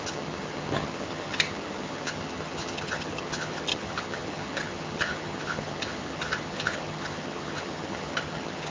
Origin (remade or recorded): remade